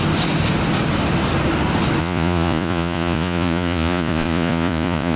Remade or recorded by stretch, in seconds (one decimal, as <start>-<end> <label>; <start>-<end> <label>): 0.0-2.0 recorded; 2.0-5.2 remade